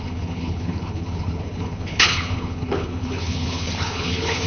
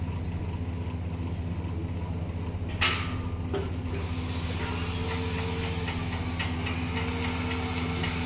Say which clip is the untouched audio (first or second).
second